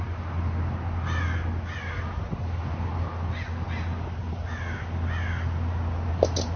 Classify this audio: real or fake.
real